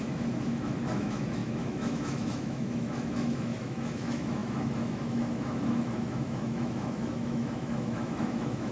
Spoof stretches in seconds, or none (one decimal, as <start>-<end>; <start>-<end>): 0.0-8.7